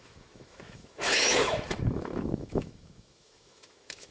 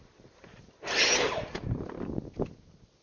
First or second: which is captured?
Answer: second